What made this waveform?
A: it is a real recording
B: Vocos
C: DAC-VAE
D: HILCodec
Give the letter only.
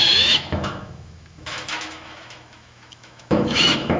C